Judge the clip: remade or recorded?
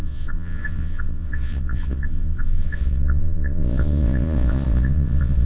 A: remade